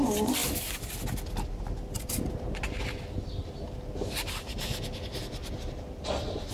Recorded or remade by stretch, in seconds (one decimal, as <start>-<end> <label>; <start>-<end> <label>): 0.0-0.4 recorded; 0.4-2.1 remade; 2.1-6.5 recorded